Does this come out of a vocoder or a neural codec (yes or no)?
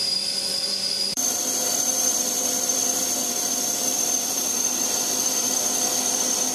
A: yes